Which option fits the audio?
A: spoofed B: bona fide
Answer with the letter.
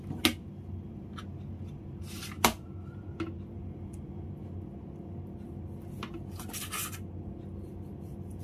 B